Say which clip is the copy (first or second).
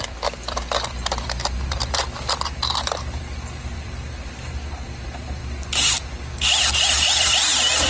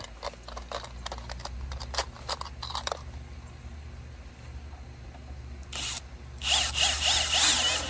first